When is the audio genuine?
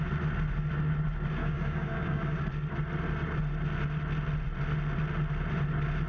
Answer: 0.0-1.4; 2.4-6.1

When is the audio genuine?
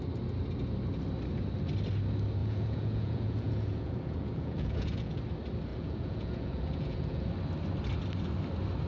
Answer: 0.0-2.4; 5.2-5.7; 7.3-8.9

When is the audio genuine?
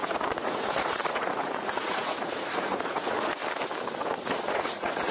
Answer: 3.4-4.0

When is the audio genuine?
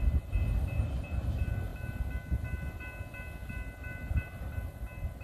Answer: 0.0-5.2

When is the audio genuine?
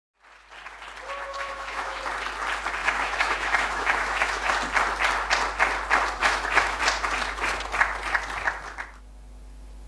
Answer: 0.0-1.3; 2.0-2.8; 4.5-6.2; 6.8-9.9